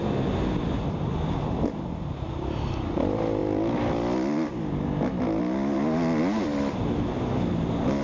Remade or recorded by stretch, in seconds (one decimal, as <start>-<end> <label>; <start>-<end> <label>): 0.0-8.0 recorded